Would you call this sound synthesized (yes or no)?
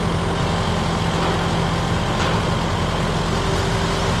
no